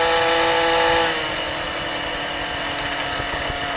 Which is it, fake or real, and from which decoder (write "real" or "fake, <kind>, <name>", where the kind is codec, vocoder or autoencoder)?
real